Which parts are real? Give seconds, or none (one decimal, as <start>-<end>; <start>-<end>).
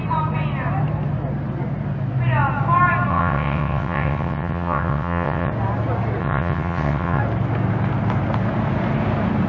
0.0-3.1; 5.5-6.2; 7.2-9.5